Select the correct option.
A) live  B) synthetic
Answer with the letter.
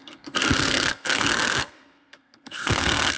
B